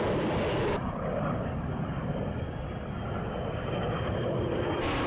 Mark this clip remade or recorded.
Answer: recorded